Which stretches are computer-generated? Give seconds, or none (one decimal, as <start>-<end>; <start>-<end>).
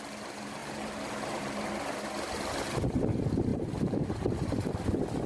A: 0.6-1.7; 3.5-4.3